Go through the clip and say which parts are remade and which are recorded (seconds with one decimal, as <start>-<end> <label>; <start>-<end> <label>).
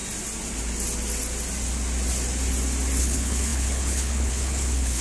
0.0-3.0 recorded; 3.0-5.0 remade